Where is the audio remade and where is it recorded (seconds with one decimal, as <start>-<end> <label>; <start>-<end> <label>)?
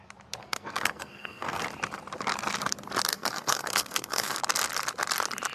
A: 0.0-0.4 recorded; 0.4-1.6 remade; 1.6-3.1 recorded; 3.1-4.4 remade; 4.4-5.5 recorded